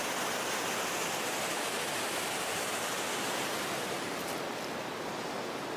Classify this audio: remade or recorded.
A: recorded